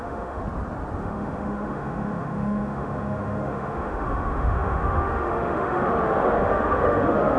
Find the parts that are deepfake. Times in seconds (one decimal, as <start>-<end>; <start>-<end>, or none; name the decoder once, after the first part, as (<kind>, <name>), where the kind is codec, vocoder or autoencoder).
0.0-0.4 (autoencoder, DAC-VAE); 1.0-7.4